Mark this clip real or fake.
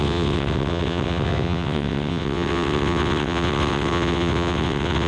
fake